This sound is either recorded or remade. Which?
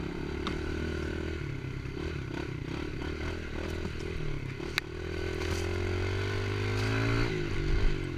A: recorded